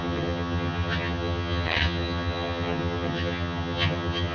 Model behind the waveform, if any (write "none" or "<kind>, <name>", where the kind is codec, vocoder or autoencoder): vocoder, HiFi-GAN